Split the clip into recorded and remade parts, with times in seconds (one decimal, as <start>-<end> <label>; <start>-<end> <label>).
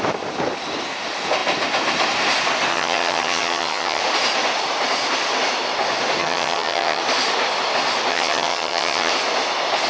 0.0-2.7 recorded; 2.7-4.0 remade; 4.0-6.2 recorded; 6.2-7.0 remade; 7.0-8.1 recorded; 8.1-9.1 remade; 9.1-9.9 recorded